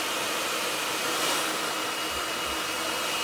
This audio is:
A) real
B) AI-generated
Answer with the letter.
A